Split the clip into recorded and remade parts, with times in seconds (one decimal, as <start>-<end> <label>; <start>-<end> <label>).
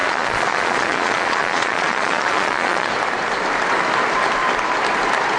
0.0-2.9 remade; 2.9-5.4 recorded